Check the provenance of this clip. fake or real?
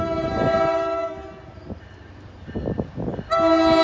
real